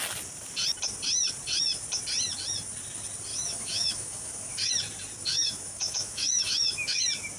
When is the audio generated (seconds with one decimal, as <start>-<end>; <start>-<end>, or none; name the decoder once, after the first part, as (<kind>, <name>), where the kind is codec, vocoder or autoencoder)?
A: 3.3-4.7 (autoencoder, DAC-VAE); 5.3-7.0